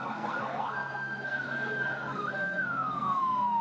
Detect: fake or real fake